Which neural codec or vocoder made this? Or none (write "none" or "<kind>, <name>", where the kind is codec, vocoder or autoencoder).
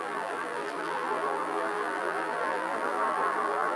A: vocoder, BigVGAN v2